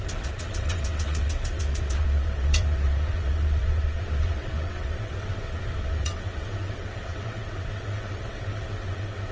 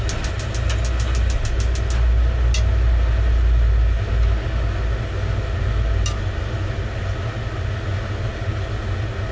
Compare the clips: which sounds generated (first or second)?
first